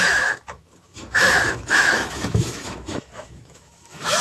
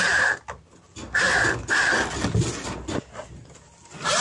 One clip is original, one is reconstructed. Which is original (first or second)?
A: second